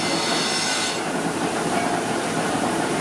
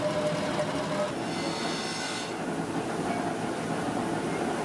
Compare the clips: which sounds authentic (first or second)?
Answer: second